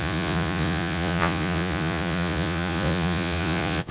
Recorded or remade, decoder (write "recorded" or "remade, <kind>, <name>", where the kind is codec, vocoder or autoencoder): remade, vocoder, Vocos